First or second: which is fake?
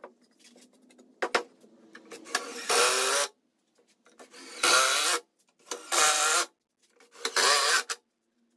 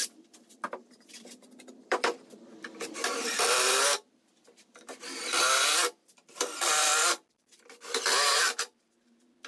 second